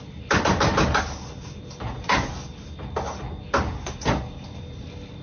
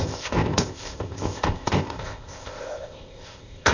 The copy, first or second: second